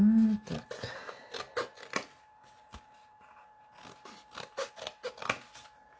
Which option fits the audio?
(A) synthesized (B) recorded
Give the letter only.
B